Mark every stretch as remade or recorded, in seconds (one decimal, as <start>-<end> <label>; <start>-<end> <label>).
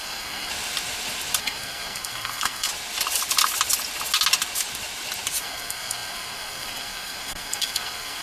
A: 0.0-0.5 remade; 0.5-1.4 recorded; 1.4-2.7 remade; 2.7-5.4 recorded; 5.4-8.2 remade